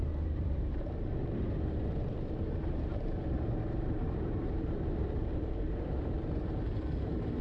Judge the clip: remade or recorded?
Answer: remade